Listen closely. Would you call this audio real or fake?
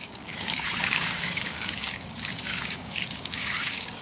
fake